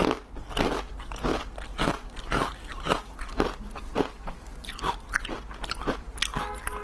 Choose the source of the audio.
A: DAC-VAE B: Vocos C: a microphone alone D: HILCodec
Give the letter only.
C